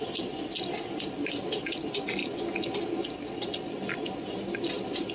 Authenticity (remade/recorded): recorded